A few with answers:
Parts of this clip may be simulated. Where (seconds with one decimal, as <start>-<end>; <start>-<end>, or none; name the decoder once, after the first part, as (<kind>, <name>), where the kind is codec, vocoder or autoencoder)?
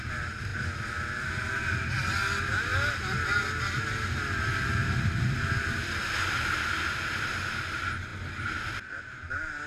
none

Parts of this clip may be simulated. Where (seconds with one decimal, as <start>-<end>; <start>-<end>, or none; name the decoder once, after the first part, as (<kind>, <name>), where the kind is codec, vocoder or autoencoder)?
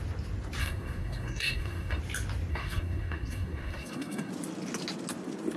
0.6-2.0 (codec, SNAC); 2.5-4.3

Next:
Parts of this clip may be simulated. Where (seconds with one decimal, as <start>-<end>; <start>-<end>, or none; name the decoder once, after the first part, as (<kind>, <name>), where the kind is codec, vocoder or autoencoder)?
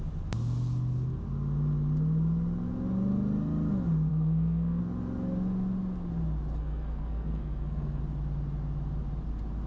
4.1-4.8 (codec, SNAC); 6.6-8.0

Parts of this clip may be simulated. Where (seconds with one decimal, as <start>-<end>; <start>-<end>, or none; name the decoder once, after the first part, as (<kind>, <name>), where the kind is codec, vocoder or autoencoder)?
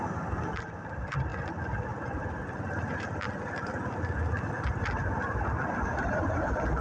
none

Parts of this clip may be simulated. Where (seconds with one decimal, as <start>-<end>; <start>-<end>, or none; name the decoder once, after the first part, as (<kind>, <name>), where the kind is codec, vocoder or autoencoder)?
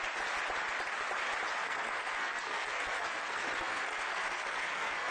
1.6-5.1 (codec, SNAC)